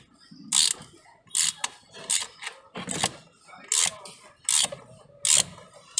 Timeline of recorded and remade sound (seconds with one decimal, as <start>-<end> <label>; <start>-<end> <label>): 0.0-6.0 recorded